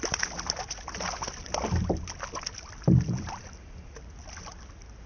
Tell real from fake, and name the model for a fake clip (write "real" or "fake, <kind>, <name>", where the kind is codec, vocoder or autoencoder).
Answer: real